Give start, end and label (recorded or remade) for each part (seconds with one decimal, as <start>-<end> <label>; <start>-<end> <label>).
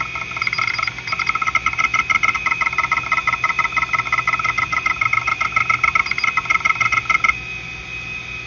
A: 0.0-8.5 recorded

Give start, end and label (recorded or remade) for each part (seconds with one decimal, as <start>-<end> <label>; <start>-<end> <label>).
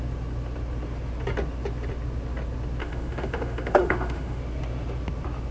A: 0.0-2.8 recorded; 2.8-4.4 remade; 4.4-5.5 recorded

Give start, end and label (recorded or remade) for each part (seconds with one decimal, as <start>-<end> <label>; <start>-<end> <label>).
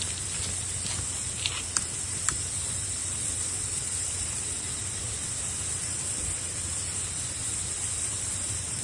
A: 0.0-8.8 remade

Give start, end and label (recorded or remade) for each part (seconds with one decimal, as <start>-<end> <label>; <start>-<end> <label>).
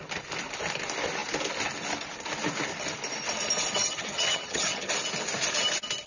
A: 0.0-3.8 recorded; 3.8-4.9 remade; 4.9-6.1 recorded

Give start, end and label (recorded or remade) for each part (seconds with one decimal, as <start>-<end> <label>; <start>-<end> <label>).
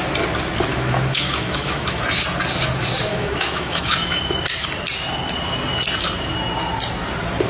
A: 0.0-0.7 recorded; 0.7-2.0 remade; 2.0-3.1 recorded; 3.1-4.2 remade; 4.2-7.5 recorded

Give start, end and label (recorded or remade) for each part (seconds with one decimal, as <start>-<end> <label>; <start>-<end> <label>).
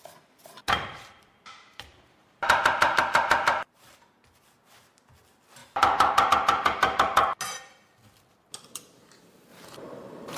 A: 0.0-0.6 recorded; 0.6-3.7 remade; 3.7-5.6 recorded; 5.6-6.3 remade; 6.3-9.5 recorded; 9.5-10.4 remade